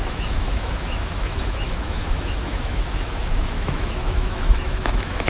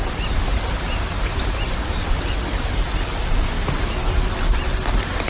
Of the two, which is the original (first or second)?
second